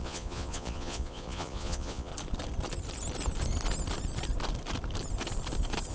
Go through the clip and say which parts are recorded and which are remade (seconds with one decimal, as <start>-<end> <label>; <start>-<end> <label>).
0.0-2.1 remade; 2.1-5.9 recorded